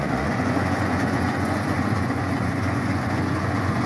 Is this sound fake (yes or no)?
yes